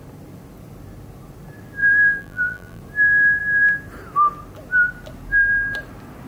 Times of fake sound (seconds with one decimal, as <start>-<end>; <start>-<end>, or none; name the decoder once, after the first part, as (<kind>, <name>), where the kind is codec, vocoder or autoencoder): 1.8-2.8 (vocoder, BigVGAN v2)